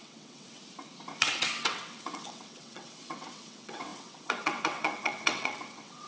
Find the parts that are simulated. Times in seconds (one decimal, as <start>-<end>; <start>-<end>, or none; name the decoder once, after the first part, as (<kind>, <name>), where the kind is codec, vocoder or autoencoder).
0.0-0.6 (vocoder, WaveNeXt); 1.2-6.1